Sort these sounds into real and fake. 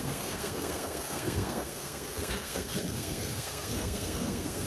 fake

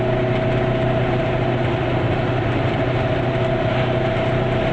real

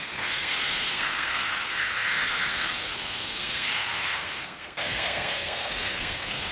fake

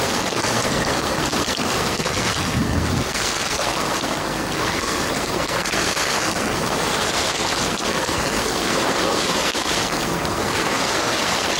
fake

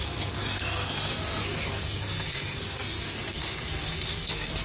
fake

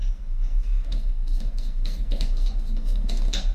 fake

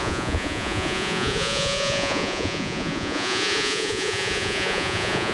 fake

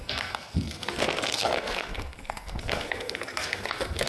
fake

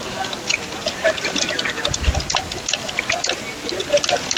real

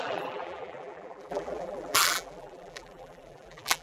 fake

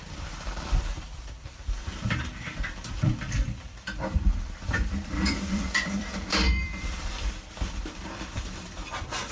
fake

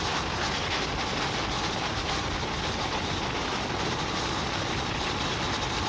real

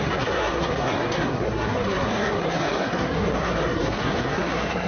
fake